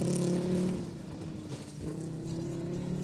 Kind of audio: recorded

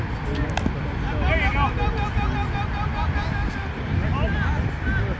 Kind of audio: recorded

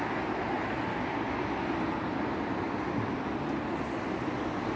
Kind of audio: recorded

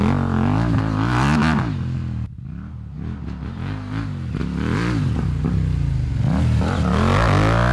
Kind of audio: recorded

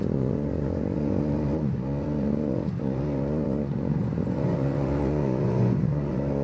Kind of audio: remade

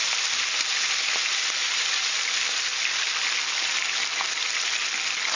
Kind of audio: recorded